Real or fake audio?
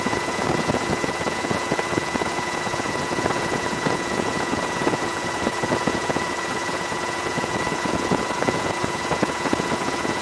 fake